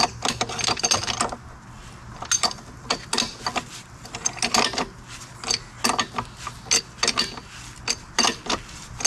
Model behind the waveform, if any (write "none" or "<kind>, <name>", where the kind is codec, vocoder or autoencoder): none